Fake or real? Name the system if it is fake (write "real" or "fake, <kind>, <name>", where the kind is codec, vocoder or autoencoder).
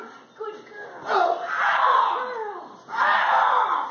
real